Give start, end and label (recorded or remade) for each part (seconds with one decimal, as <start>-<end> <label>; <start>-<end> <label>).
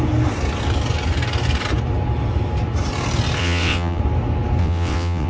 0.0-3.4 recorded; 3.4-4.0 remade; 4.0-4.6 recorded; 4.6-5.3 remade